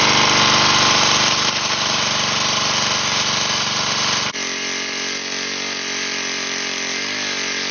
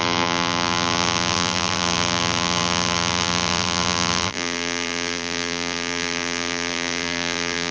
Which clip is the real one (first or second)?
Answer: first